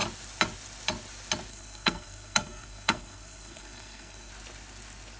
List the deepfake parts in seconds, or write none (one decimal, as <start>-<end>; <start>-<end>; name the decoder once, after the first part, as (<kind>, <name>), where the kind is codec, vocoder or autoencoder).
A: 1.5-4.3 (codec, SNAC)